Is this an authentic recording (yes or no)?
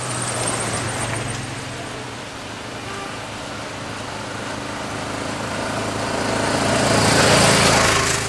yes